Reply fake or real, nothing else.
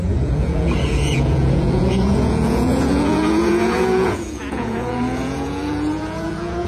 fake